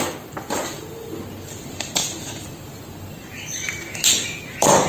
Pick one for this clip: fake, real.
real